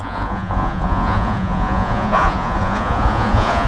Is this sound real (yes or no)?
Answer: no